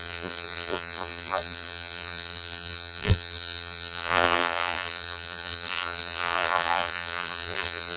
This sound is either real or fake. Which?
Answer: fake